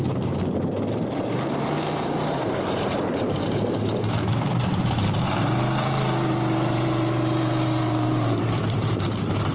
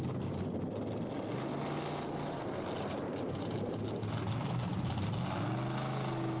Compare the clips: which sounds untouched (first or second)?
second